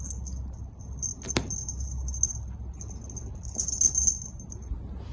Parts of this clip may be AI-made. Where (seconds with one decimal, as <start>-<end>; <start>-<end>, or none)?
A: none